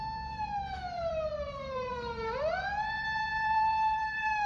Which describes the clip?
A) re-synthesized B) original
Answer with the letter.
A